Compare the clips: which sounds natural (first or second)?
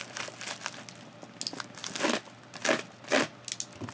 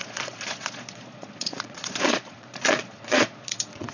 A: first